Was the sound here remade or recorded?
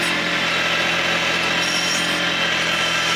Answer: recorded